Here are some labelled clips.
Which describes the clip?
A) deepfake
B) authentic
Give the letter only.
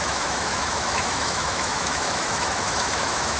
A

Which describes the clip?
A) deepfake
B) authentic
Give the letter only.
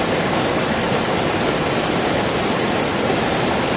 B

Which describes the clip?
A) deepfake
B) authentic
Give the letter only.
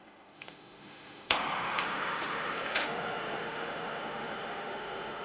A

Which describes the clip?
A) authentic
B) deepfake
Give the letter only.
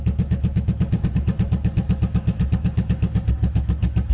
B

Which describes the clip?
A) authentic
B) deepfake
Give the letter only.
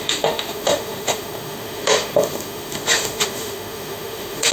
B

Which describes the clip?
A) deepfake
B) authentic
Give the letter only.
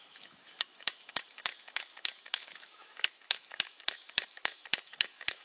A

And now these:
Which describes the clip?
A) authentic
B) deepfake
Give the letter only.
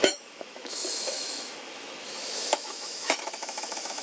B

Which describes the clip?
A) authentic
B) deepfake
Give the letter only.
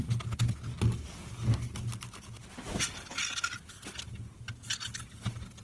A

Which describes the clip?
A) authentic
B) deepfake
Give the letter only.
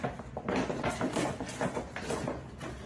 A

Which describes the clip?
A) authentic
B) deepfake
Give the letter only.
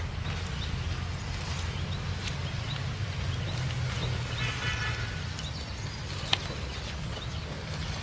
A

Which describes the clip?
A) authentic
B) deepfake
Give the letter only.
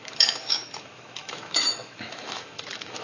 B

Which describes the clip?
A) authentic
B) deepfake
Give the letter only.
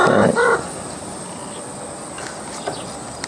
A